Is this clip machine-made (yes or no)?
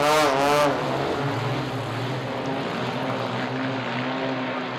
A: no